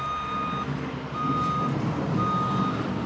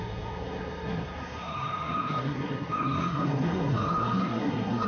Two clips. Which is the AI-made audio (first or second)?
second